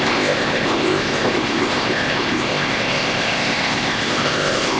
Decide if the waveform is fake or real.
fake